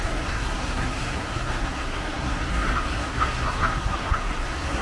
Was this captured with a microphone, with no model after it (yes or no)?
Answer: no